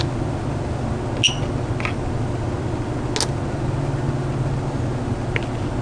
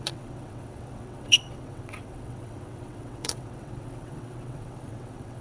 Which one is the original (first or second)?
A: first